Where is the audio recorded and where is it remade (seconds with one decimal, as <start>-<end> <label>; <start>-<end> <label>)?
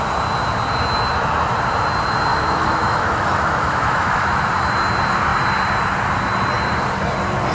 0.0-2.3 recorded; 2.3-4.4 remade; 4.4-7.5 recorded